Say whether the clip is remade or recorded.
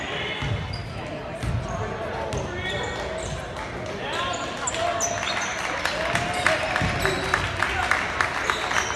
recorded